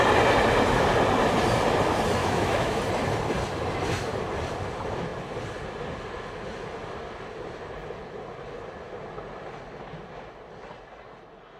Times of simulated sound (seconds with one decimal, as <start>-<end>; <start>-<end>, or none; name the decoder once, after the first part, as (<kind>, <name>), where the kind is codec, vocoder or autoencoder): 2.2-2.8 (autoencoder, DAC-VAE)